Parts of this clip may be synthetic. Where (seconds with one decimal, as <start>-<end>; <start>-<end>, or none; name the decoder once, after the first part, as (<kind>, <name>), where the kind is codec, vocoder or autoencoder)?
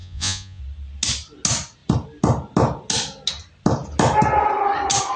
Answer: 0.0-0.6 (vocoder, Vocos)